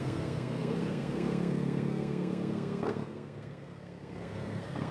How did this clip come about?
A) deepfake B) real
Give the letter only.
A